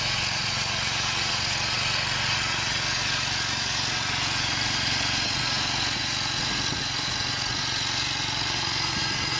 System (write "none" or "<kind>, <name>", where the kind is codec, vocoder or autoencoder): vocoder, Vocos